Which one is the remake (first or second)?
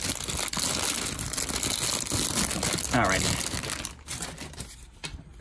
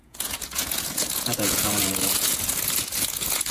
second